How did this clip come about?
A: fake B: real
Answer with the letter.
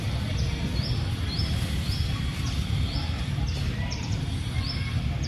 B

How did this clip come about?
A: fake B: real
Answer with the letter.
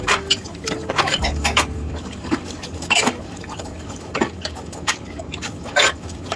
A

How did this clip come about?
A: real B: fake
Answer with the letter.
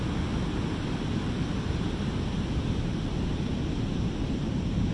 A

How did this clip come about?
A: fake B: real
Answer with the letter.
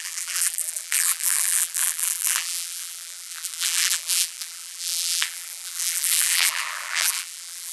A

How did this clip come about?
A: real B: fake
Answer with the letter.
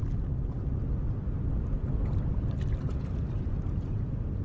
A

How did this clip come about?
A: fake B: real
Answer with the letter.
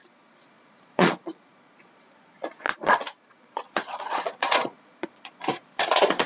A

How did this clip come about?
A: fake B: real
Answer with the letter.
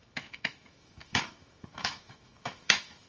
A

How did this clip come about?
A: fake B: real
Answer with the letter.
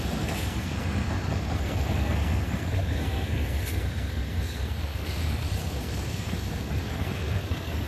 A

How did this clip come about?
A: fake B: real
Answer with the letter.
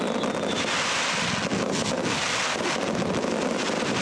B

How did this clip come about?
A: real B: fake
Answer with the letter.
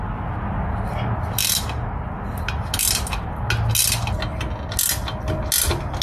A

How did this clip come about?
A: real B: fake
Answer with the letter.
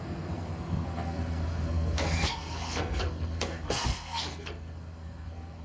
B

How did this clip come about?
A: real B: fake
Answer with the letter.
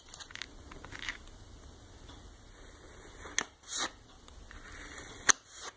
A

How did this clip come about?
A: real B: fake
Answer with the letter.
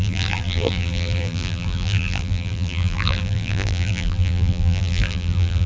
B